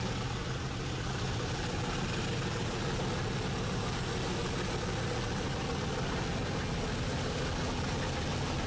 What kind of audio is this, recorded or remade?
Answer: recorded